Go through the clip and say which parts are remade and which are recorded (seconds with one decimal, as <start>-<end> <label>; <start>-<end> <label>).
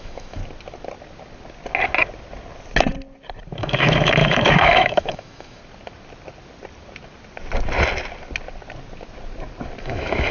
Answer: 0.0-0.4 remade; 0.4-3.6 recorded; 3.6-5.6 remade; 5.6-9.8 recorded; 9.8-10.3 remade